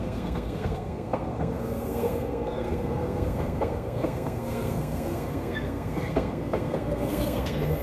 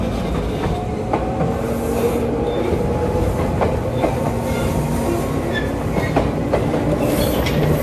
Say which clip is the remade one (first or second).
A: first